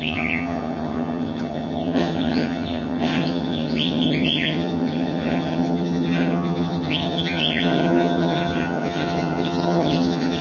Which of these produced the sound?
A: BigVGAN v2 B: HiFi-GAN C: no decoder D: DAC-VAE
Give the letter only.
B